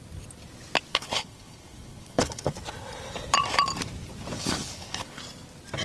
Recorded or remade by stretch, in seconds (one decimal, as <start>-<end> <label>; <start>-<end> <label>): 0.0-0.9 recorded; 0.9-2.5 remade; 2.5-4.4 recorded; 4.4-5.2 remade; 5.2-5.8 recorded